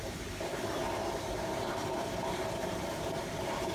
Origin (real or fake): fake